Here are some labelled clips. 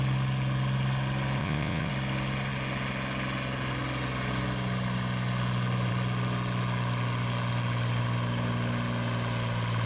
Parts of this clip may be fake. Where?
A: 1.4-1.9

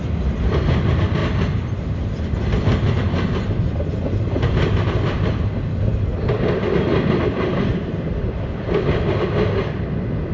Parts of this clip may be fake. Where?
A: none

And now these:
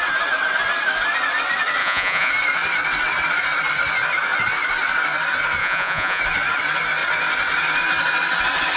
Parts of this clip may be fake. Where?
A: 1.8-2.3; 5.6-6.2

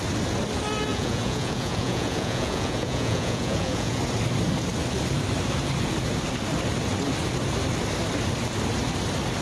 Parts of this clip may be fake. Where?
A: 0.9-4.0

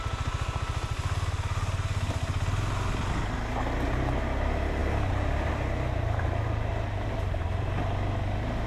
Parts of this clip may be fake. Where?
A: none

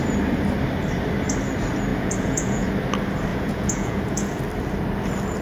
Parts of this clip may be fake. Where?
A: 1.9-2.7; 3.3-4.4

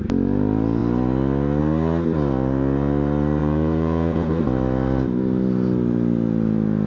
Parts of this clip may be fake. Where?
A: 3.4-4.4